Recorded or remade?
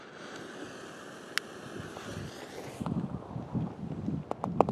recorded